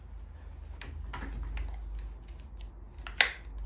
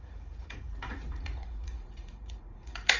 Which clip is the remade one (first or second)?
second